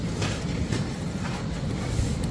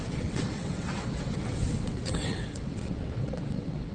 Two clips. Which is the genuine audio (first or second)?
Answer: first